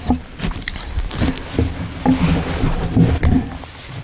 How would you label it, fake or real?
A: real